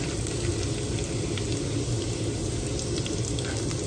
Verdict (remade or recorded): recorded